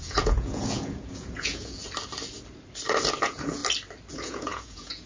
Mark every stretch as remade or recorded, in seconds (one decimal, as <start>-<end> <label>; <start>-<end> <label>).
0.0-1.8 remade; 1.8-3.2 recorded; 3.2-3.6 remade; 3.6-4.1 recorded; 4.1-5.1 remade

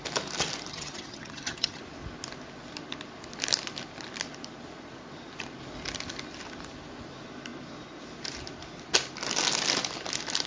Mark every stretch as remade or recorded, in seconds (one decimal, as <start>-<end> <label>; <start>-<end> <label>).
0.0-0.7 recorded; 0.7-1.8 remade; 1.8-10.5 recorded

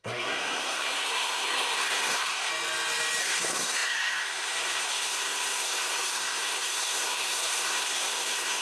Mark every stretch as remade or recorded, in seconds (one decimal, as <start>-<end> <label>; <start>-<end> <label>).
0.0-2.5 remade; 2.5-3.2 recorded; 3.2-8.6 remade

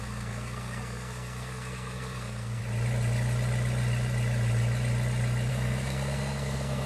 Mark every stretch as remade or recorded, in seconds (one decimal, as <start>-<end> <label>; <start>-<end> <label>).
0.0-2.6 remade; 2.6-5.5 recorded; 5.5-6.9 remade

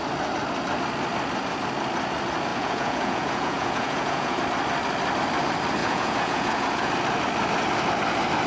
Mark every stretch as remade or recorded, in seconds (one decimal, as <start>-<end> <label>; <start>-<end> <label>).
0.0-2.5 recorded; 2.5-4.4 remade; 4.4-5.8 recorded; 5.8-6.9 remade; 6.9-8.5 recorded

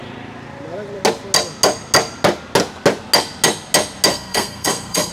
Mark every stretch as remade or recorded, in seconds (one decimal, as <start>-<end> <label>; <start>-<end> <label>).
0.0-4.1 recorded; 4.1-5.1 remade

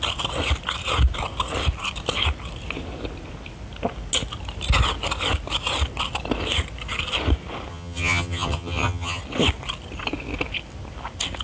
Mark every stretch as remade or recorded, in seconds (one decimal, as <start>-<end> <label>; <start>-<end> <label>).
0.0-7.7 recorded; 7.7-9.2 remade; 9.2-11.4 recorded

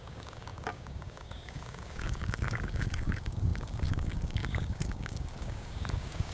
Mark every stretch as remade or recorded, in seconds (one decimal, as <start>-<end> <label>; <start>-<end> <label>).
0.0-6.3 remade